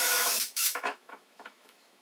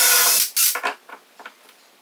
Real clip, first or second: second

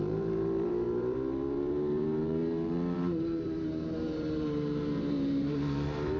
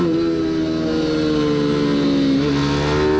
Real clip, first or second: second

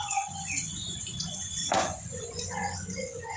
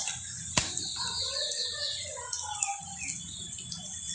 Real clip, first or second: second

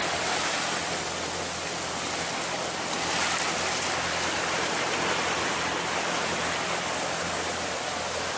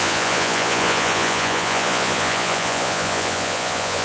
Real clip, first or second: first